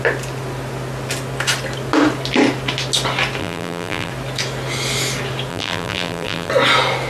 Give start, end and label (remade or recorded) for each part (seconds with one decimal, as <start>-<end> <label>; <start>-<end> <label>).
0.0-3.4 recorded; 3.4-4.1 remade; 4.1-5.5 recorded; 5.5-6.5 remade; 6.5-7.1 recorded